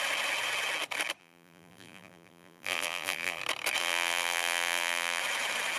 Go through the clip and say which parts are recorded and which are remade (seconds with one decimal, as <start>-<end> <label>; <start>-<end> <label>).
0.0-1.2 recorded; 1.2-3.4 remade; 3.4-3.8 recorded; 3.8-5.2 remade; 5.2-5.8 recorded